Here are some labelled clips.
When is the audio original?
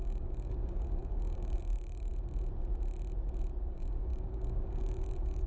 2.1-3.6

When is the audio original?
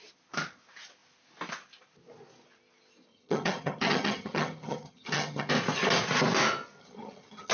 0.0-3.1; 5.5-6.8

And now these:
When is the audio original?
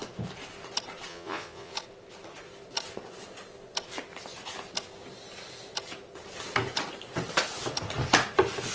0.0-1.1; 1.7-8.7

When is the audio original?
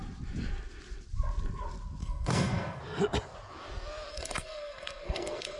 0.0-2.0; 2.8-4.1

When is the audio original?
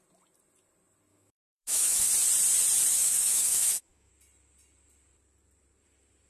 0.0-1.1; 2.1-2.9; 4.1-6.3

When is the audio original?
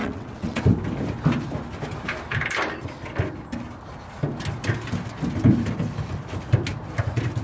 0.6-7.4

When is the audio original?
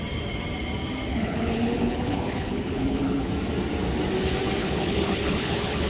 0.0-1.1; 3.3-4.6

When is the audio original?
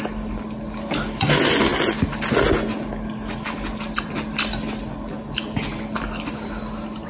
0.0-7.1